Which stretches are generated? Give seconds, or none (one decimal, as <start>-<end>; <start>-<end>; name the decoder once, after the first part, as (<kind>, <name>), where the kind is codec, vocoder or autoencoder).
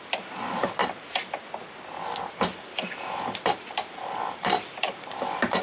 0.0-0.8 (vocoder, BigVGAN v2); 2.0-5.6